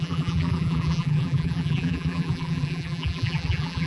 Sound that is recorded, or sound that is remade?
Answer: remade